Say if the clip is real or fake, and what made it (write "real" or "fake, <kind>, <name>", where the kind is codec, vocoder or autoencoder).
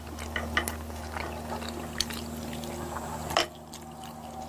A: real